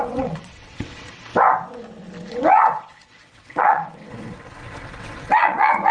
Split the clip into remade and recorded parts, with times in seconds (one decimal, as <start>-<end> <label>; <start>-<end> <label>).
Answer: 0.0-1.3 remade; 1.3-2.3 recorded; 2.3-5.9 remade